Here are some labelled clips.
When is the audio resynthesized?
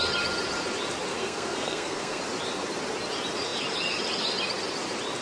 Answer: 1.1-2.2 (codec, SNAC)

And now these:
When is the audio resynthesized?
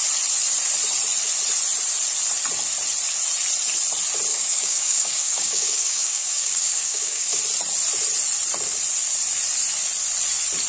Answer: 4.3-7.4 (codec, DAC)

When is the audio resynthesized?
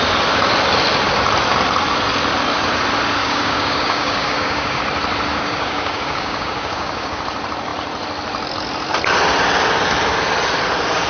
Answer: 3.2-4.8 (codec, DAC); 5.3-7.2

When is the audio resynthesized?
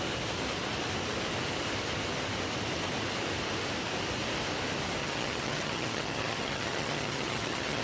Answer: 5.0-7.8 (vocoder, HiFi-GAN)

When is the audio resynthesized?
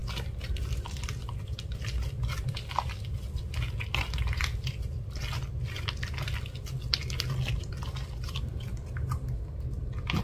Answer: none